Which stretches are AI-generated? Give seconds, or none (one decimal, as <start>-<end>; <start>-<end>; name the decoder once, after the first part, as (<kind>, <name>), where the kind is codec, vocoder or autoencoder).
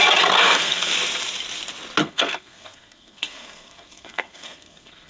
0.4-0.9 (codec, SNAC); 2.0-5.1